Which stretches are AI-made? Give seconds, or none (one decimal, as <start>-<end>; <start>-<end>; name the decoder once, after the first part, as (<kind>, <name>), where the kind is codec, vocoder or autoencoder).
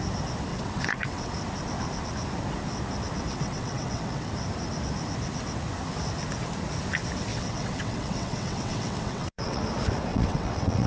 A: 0.5-1.3 (vocoder, WaveNeXt); 3.3-4.3; 7.3-9.6; 10.1-10.9